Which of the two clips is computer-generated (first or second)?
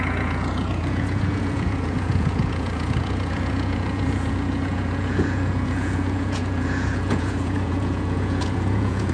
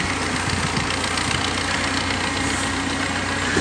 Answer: first